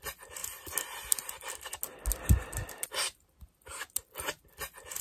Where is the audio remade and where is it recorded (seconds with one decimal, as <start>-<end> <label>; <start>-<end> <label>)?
0.0-5.0 recorded